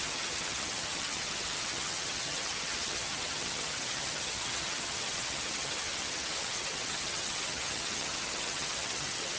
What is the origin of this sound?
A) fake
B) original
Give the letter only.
A